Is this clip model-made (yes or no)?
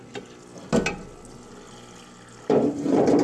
no